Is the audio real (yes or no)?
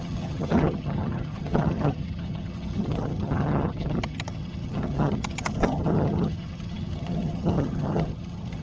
no